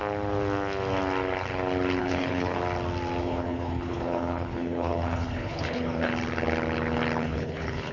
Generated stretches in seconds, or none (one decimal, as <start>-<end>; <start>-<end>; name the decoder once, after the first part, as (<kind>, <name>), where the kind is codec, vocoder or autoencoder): 2.0-2.6 (codec, HILCodec); 3.2-6.1; 7.2-7.9